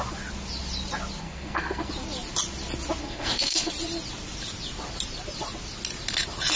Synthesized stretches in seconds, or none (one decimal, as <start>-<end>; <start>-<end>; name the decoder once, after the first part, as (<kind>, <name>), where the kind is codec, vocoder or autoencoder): 1.2-1.9 (codec, SNAC); 3.0-3.7